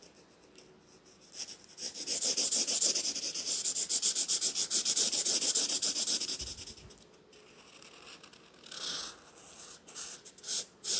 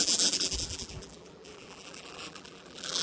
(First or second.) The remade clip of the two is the second